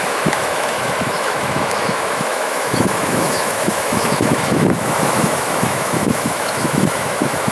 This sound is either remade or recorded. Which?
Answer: remade